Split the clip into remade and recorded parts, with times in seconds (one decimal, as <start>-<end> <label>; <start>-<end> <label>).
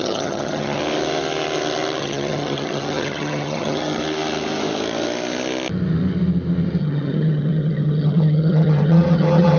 0.0-0.8 remade; 0.8-2.0 recorded; 2.0-4.0 remade; 4.0-6.8 recorded; 6.8-9.6 remade